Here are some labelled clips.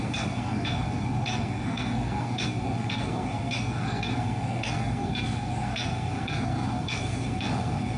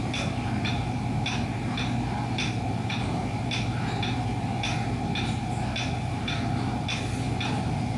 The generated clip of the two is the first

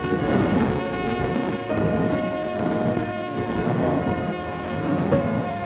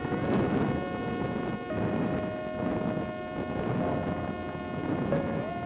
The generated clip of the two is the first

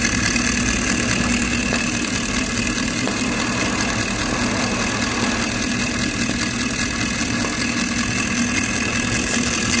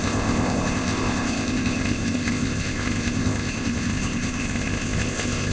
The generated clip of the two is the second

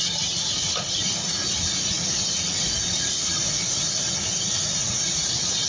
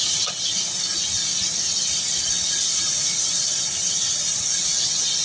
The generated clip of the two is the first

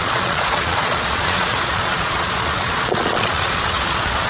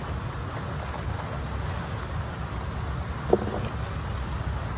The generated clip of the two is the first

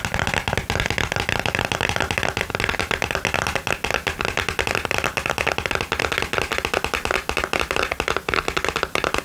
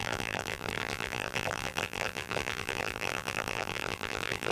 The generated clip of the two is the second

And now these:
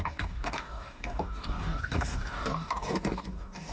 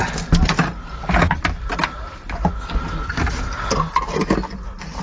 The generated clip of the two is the first